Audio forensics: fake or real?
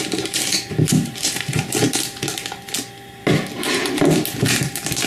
real